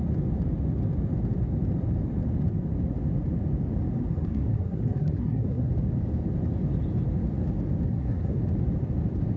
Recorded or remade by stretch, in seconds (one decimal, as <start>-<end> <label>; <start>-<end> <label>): 0.0-4.0 recorded; 4.0-5.7 remade; 5.7-7.9 recorded; 7.9-8.4 remade; 8.4-9.4 recorded

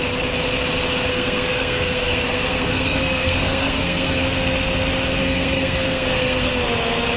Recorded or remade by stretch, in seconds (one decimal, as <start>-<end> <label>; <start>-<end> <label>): 0.0-1.1 recorded; 1.1-4.2 remade; 4.2-5.2 recorded; 5.2-6.5 remade; 6.5-7.2 recorded

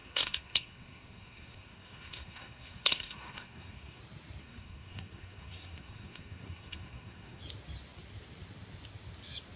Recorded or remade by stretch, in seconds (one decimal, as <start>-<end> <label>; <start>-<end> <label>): 0.0-4.0 remade; 4.0-4.4 recorded; 4.4-7.4 remade; 7.4-9.6 recorded

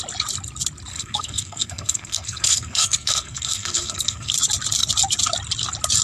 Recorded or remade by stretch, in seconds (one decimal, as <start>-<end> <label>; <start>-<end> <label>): 0.0-0.9 recorded; 0.9-4.3 remade; 4.3-6.0 recorded

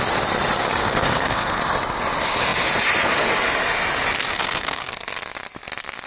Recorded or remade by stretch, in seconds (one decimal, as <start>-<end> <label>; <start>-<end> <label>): 0.0-0.8 recorded; 0.8-1.6 remade; 1.6-4.3 recorded; 4.3-4.9 remade; 4.9-6.1 recorded

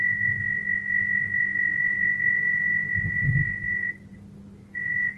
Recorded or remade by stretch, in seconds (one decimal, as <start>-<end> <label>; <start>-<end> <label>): 0.0-5.2 recorded

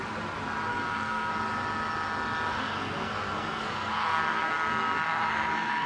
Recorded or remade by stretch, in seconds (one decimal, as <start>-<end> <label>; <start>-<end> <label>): 0.0-0.7 recorded; 0.7-1.3 remade; 1.3-2.5 recorded; 2.5-5.9 remade

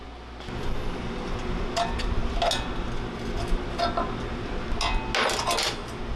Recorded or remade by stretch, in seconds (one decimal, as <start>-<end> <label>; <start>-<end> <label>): 0.0-6.2 recorded